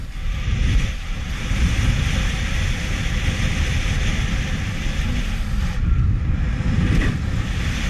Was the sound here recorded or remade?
remade